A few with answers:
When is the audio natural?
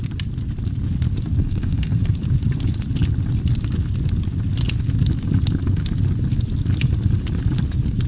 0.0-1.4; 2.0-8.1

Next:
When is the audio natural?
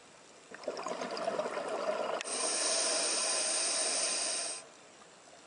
0.0-5.5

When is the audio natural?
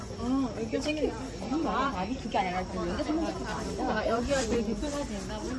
0.0-1.5; 3.1-3.5; 5.1-5.6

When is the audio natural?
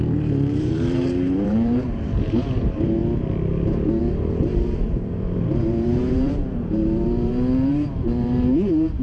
3.0-4.0